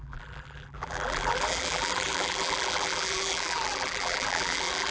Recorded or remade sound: remade